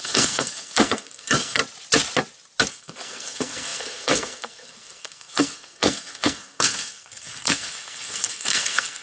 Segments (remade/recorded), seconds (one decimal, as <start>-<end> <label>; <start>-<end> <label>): 0.0-1.6 remade; 1.6-2.7 recorded; 2.7-9.0 remade